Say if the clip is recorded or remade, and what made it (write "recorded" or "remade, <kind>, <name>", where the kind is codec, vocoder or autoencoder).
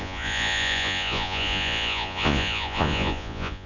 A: remade, vocoder, Vocos